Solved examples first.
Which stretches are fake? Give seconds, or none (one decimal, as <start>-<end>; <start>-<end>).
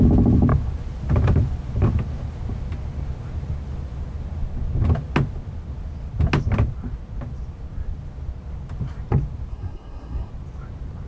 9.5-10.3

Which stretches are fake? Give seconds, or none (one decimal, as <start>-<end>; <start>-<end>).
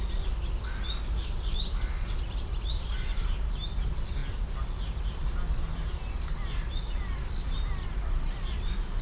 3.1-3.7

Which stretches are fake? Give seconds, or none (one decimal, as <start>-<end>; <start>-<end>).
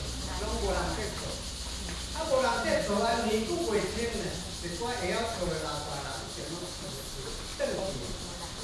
none